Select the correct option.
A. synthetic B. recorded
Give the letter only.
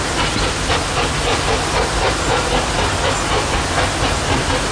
B